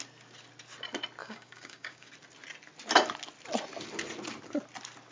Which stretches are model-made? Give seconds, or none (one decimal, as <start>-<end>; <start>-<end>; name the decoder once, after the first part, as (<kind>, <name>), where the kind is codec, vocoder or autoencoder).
1.2-2.1 (codec, DAC)